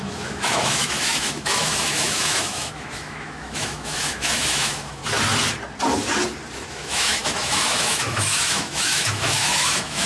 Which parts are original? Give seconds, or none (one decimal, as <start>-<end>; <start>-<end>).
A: 5.0-6.7